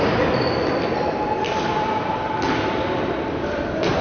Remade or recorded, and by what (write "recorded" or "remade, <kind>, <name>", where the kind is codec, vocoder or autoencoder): recorded